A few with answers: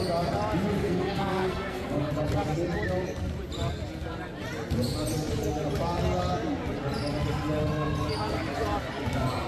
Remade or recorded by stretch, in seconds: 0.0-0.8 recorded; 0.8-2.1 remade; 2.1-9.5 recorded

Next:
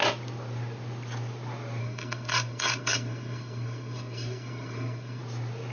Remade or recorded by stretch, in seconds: 0.0-1.8 recorded; 1.8-5.2 remade; 5.2-5.7 recorded